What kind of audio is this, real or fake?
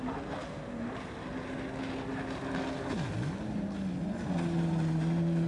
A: real